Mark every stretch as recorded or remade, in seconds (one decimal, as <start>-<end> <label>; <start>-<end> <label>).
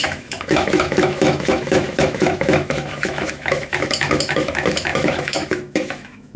0.0-6.4 remade